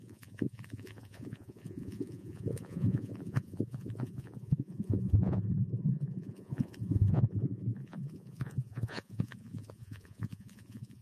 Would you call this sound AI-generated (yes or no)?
yes